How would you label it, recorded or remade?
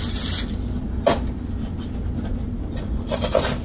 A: recorded